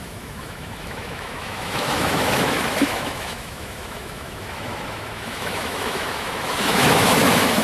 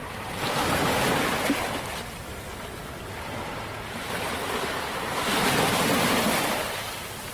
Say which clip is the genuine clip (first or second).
second